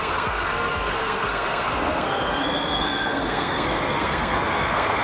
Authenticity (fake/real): fake